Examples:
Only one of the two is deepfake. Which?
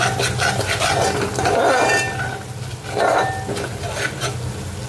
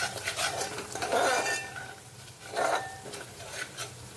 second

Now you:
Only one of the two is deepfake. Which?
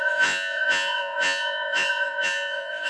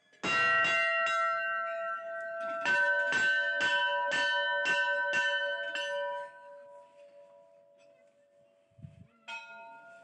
first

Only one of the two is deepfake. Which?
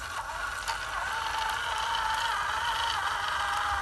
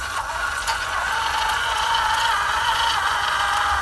second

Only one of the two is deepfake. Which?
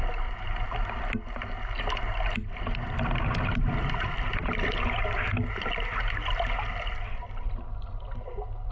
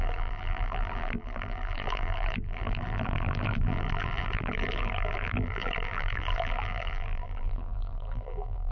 second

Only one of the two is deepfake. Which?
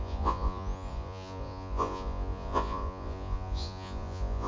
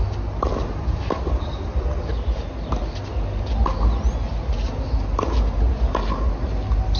first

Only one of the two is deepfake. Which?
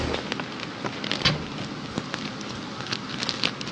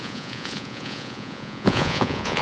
second